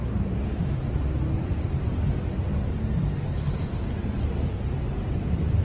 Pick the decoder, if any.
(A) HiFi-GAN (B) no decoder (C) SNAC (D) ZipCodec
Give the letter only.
B